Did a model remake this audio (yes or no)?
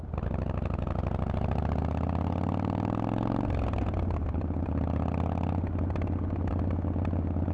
no